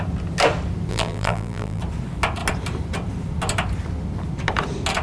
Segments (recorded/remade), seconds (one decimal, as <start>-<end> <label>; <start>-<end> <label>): 0.0-0.9 recorded; 0.9-1.8 remade; 1.8-5.0 recorded